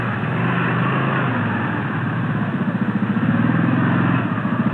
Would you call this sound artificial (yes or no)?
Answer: no